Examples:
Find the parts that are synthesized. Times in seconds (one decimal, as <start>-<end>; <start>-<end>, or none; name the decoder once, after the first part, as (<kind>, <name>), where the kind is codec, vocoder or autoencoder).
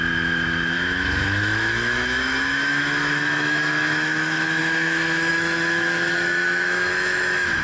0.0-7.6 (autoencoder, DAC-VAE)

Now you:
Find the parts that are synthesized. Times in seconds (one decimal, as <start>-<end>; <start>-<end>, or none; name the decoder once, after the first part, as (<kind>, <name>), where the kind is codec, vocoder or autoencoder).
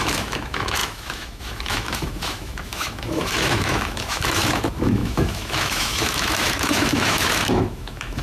0.0-8.2 (autoencoder, DAC-VAE)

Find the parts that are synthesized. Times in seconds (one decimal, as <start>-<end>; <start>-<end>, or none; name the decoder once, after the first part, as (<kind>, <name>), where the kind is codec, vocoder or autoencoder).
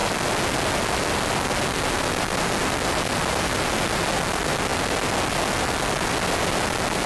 none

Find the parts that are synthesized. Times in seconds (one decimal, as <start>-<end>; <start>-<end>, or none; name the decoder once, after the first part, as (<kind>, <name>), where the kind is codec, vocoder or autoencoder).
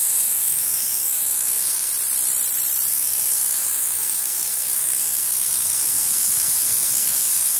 0.0-1.9 (codec, SNAC); 2.9-7.6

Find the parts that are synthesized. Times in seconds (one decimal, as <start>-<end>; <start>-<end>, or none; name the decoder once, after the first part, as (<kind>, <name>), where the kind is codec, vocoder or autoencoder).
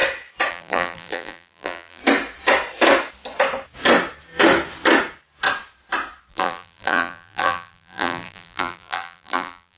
0.5-2.0 (vocoder, BigVGAN v2); 6.3-9.8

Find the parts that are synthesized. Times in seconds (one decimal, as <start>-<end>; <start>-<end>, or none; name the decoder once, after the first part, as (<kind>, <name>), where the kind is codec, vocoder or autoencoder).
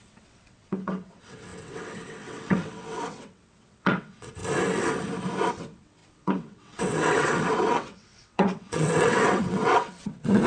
0.0-4.4 (vocoder, WaveNeXt); 5.5-10.5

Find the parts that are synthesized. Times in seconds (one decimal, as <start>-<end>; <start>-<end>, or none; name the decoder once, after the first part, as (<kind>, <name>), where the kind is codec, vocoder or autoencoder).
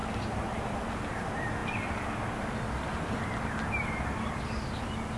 0.0-5.2 (vocoder, BigVGAN v2)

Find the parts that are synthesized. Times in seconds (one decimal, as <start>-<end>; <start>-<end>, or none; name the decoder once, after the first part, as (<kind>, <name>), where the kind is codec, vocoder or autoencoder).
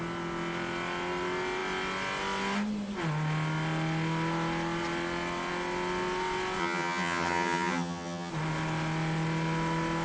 6.6-8.3 (vocoder, HiFi-GAN)